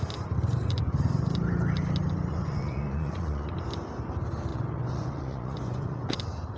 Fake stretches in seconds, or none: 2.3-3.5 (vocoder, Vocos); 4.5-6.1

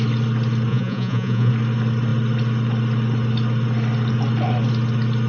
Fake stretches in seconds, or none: 0.7-1.5 (vocoder, Vocos)

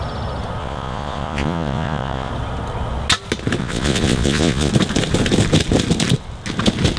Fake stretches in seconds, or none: 0.6-2.3 (vocoder, Vocos); 3.6-4.7

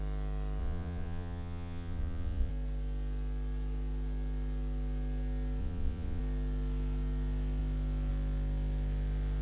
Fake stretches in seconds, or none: 0.6-2.5 (vocoder, Vocos); 5.6-6.2

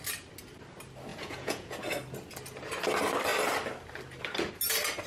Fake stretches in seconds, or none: 1.1-1.8 (vocoder, Vocos)

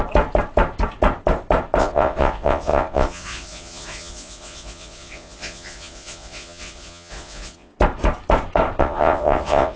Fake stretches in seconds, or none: 1.8-7.7 (vocoder, Vocos); 8.8-9.8

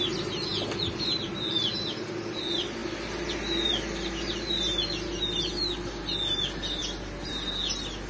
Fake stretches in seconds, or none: none

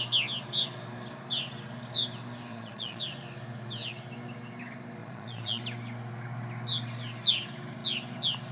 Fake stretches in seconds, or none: 2.5-3.0 (vocoder, Vocos); 5.0-5.6